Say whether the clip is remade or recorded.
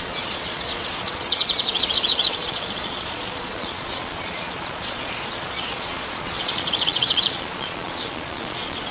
remade